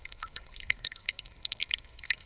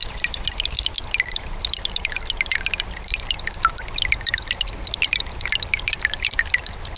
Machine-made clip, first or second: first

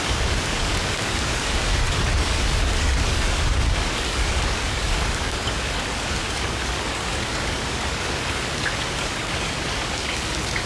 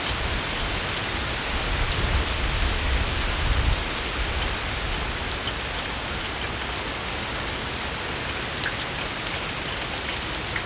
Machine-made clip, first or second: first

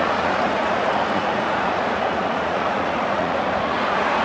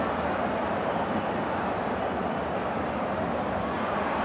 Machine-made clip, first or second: first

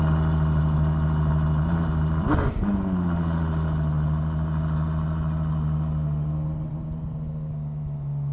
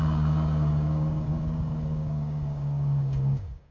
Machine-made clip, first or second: second